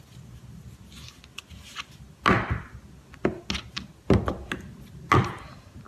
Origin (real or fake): real